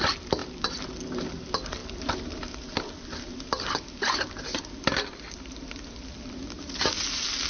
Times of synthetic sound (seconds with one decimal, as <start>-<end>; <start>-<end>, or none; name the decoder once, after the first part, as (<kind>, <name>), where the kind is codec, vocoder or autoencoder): none